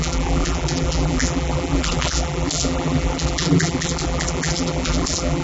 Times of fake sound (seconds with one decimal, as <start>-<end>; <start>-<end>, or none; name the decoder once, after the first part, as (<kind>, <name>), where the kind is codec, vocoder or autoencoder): 0.0-5.4 (vocoder, BigVGAN v2)